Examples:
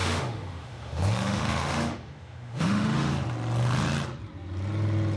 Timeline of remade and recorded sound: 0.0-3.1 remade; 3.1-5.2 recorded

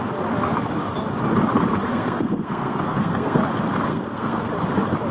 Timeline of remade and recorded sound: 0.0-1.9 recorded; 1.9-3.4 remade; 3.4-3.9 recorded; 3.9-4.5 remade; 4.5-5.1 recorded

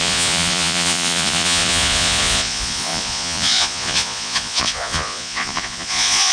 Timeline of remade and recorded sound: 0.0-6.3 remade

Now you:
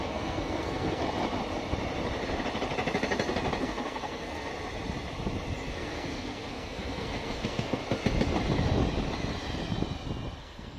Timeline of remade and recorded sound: 0.0-1.0 remade; 1.0-3.6 recorded; 3.6-4.5 remade; 4.5-5.7 recorded; 5.7-7.8 remade; 7.8-10.4 recorded; 10.4-10.8 remade

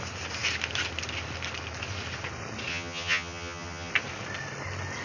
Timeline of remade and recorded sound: 0.0-2.7 recorded; 2.7-3.9 remade; 3.9-5.0 recorded